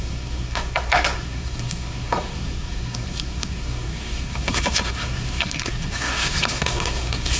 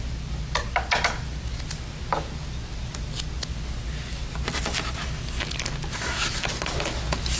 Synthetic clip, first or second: first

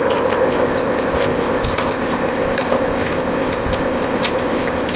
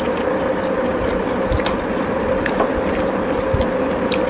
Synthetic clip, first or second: first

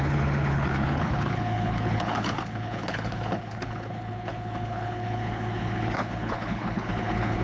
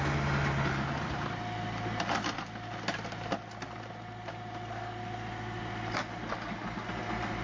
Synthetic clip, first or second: first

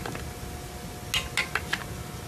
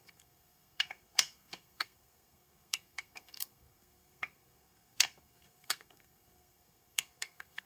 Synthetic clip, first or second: second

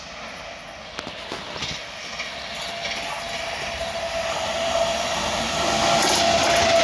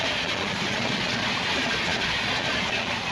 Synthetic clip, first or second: second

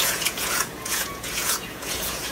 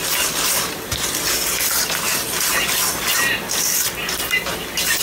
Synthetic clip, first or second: first